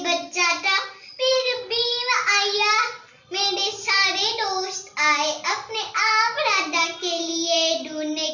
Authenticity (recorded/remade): recorded